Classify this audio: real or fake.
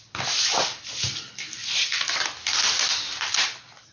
real